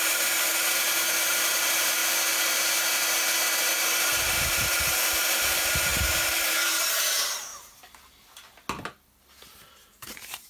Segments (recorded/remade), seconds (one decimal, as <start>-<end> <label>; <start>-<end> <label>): 0.0-2.0 remade; 2.0-3.6 recorded; 3.6-7.5 remade; 7.5-9.7 recorded; 9.7-10.5 remade